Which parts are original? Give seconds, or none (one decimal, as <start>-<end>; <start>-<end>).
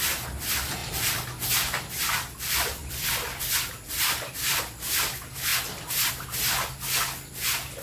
0.0-0.8; 4.6-7.8